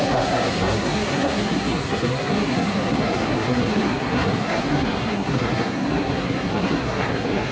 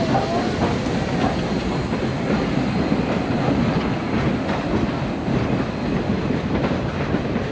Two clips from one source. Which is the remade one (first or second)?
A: first